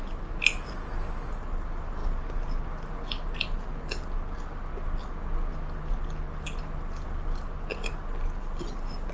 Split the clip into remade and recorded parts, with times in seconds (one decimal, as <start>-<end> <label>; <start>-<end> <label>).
0.0-9.1 recorded